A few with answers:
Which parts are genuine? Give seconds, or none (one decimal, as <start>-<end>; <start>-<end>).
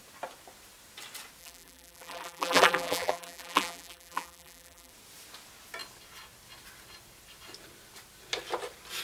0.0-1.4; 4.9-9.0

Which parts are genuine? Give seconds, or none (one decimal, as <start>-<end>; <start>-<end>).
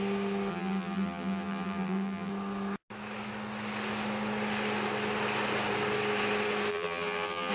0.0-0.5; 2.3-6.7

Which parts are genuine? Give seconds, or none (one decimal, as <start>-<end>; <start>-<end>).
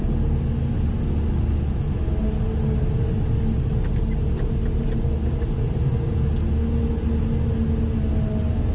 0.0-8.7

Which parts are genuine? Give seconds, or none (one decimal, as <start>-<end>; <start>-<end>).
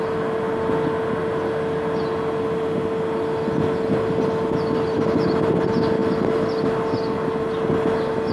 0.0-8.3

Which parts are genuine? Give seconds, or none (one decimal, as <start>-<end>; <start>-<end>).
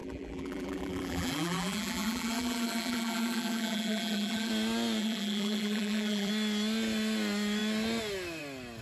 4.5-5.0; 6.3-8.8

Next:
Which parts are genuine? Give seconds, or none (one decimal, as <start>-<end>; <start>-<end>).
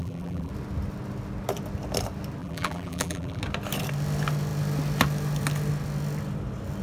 0.5-2.4; 3.4-6.8